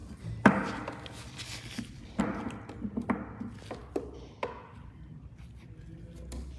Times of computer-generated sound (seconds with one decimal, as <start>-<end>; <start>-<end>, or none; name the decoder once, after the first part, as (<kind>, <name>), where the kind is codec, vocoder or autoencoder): 0.0-2.2 (vocoder, BigVGAN v2); 3.8-5.8

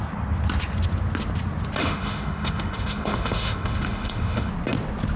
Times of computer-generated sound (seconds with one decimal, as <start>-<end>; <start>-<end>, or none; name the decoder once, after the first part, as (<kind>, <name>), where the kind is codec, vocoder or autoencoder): 1.8-4.5 (autoencoder, DAC-VAE)

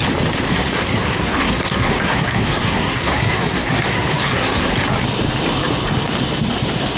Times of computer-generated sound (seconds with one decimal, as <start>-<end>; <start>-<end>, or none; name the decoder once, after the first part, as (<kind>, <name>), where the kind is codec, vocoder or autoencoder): 0.5-4.7 (codec, SNAC)

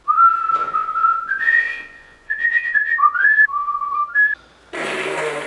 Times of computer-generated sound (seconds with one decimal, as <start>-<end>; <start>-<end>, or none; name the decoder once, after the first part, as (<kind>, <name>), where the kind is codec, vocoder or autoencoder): 0.6-3.9 (vocoder, Vocos)

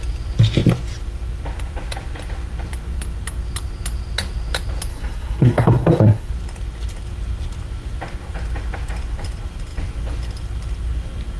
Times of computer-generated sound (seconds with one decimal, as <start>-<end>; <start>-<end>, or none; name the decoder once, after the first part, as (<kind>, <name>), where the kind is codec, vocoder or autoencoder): 4.9-6.3 (codec, SNAC)

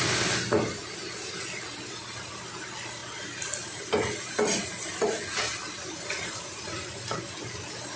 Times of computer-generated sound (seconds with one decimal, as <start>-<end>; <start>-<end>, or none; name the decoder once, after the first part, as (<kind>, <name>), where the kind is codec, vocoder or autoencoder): none